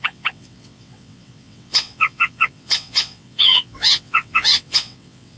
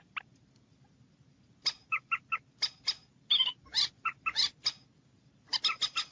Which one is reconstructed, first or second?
first